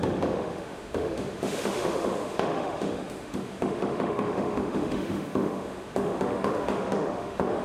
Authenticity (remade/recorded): remade